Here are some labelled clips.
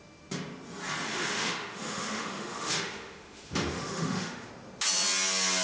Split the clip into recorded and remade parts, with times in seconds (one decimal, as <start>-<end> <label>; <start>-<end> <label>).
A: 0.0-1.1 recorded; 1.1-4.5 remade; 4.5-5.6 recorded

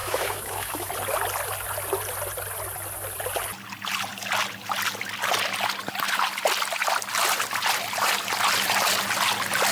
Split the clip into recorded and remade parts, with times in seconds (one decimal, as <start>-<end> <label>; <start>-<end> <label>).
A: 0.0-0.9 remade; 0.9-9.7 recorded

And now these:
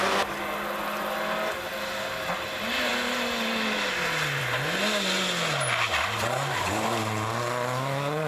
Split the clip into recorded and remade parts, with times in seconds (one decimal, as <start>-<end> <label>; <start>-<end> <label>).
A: 0.0-8.3 recorded